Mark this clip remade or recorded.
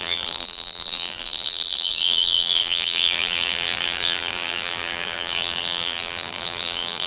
remade